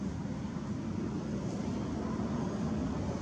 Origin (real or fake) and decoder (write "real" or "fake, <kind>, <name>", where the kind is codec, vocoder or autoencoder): real